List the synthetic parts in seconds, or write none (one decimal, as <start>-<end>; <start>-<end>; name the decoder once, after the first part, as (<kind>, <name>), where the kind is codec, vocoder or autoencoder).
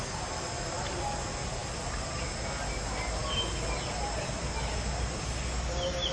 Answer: none